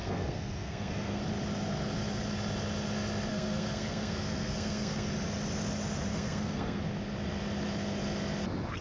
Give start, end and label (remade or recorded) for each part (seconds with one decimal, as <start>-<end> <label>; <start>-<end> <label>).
0.0-1.2 remade; 1.2-3.3 recorded; 3.3-5.1 remade; 5.1-6.1 recorded; 6.1-6.8 remade; 6.8-8.8 recorded